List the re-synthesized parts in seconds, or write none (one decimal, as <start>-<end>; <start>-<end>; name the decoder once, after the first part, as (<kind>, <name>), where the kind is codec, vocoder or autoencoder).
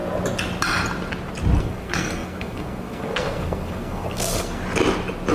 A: 1.6-4.6 (codec, SNAC)